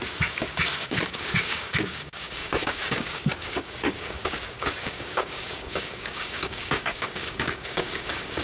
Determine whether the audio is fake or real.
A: fake